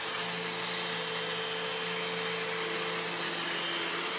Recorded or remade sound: recorded